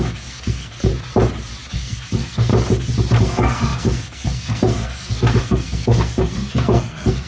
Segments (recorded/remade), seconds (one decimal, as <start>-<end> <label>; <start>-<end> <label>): 0.0-0.9 remade; 0.9-1.7 recorded; 1.7-2.5 remade; 2.5-3.2 recorded; 3.2-7.3 remade

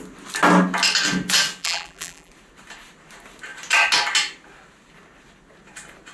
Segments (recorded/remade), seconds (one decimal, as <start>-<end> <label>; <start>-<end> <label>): 0.0-1.6 recorded; 1.6-2.3 remade; 2.3-6.1 recorded